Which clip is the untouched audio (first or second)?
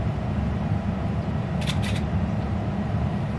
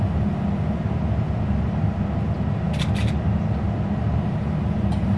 second